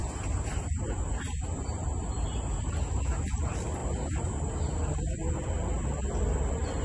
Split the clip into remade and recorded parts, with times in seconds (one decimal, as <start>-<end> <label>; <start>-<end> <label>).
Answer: 0.0-2.2 remade; 2.2-6.8 recorded